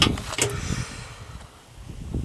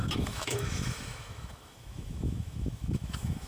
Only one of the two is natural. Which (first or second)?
first